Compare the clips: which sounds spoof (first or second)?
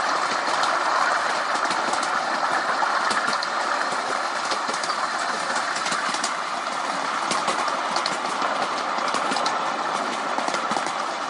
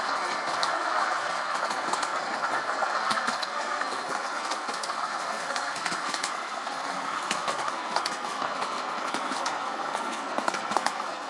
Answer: second